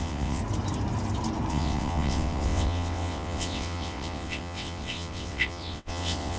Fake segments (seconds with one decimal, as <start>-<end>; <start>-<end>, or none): 0.0-0.4; 1.5-6.4